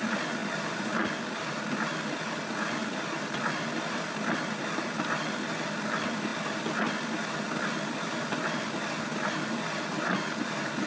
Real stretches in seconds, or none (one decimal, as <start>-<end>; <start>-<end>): 0.0-10.9